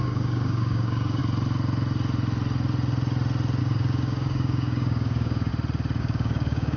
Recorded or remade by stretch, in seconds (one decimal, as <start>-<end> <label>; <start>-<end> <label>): 0.0-1.2 remade; 1.2-3.6 recorded; 3.6-5.5 remade; 5.5-6.0 recorded; 6.0-6.8 remade